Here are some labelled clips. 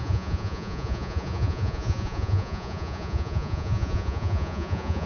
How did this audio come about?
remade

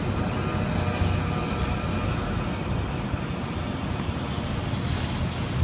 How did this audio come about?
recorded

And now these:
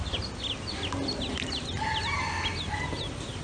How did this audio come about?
recorded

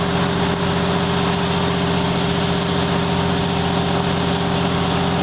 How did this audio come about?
recorded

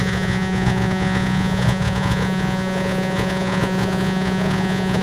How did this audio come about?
remade